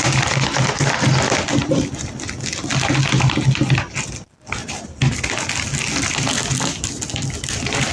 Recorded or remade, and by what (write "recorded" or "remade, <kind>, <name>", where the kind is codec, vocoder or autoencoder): recorded